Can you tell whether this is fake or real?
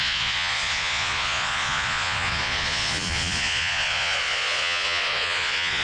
fake